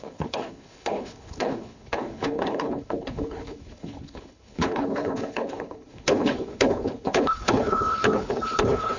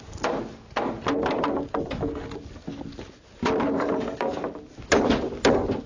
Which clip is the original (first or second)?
second